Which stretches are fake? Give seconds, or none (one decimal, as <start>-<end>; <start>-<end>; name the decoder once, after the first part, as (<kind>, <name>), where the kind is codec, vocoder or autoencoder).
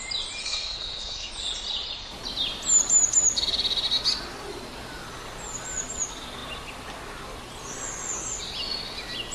0.4-1.3 (codec, SNAC)